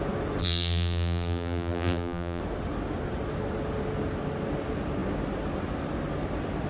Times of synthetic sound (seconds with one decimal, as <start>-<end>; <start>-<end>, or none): 0.4-2.4